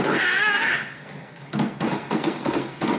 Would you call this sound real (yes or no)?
no